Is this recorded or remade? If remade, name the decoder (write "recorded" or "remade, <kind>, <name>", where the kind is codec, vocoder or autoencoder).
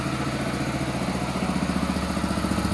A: recorded